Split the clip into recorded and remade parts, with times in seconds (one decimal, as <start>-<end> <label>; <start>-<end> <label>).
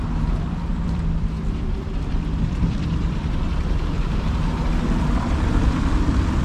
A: 0.0-0.7 recorded; 0.7-4.2 remade; 4.2-6.4 recorded